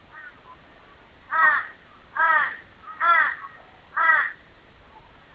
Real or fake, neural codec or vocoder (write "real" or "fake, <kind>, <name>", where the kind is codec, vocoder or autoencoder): real